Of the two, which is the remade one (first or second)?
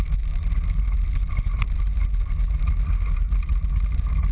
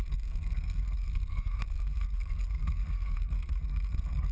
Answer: second